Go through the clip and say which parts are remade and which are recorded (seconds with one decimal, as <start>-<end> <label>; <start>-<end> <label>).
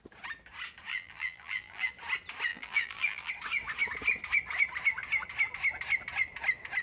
0.0-0.9 recorded; 0.9-1.9 remade; 1.9-2.5 recorded; 2.5-3.3 remade; 3.3-6.8 recorded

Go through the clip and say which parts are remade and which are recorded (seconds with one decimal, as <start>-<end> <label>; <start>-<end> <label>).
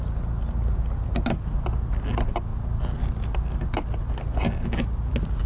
0.0-5.5 recorded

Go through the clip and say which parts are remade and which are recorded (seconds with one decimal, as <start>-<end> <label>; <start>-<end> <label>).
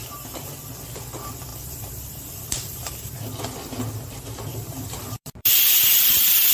0.0-0.7 remade; 0.7-1.5 recorded; 1.5-3.3 remade; 3.3-4.5 recorded; 4.5-5.6 remade; 5.6-6.5 recorded